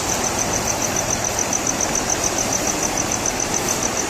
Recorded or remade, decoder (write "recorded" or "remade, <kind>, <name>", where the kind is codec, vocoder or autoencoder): recorded